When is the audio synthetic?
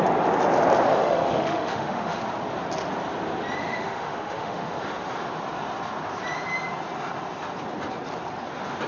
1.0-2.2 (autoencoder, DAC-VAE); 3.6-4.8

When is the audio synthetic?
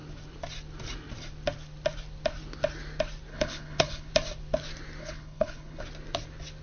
3.3-4.1 (codec, HILCodec); 5.0-5.8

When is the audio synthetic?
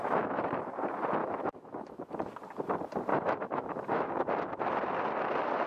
0.0-0.5 (autoencoder, DAC-VAE); 1.2-2.1; 3.1-4.1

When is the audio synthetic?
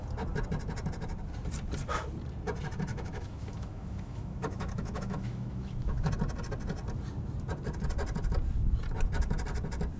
2.9-6.1 (autoencoder, DAC-VAE)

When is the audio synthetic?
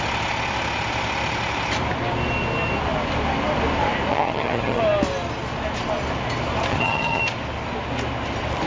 4.1-4.8 (vocoder, HiFi-GAN); 6.7-7.2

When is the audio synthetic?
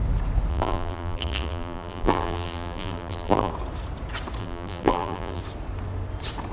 0.5-3.5 (vocoder, BigVGAN v2); 4.4-5.4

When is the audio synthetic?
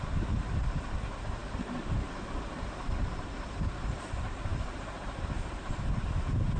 0.0-6.6 (vocoder, BigVGAN v2)